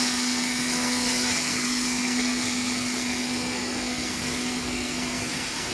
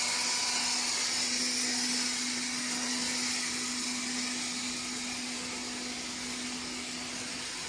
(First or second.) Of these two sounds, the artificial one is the first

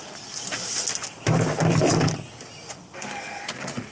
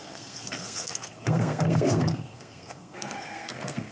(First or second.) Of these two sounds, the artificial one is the second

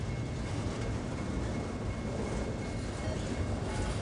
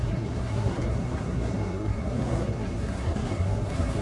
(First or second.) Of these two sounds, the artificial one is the second